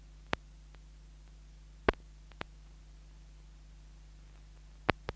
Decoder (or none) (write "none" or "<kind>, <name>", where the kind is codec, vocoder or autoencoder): none